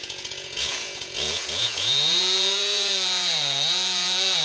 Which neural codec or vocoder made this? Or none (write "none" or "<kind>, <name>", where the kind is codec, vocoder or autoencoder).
vocoder, Vocos